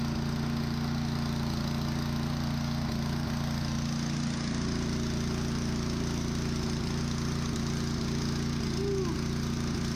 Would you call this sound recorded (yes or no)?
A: yes